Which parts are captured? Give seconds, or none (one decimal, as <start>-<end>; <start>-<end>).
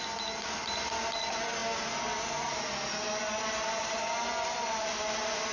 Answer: 0.0-5.5